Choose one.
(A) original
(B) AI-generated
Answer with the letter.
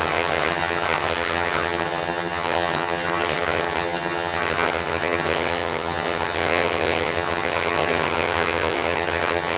B